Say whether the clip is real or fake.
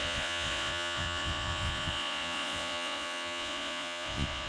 fake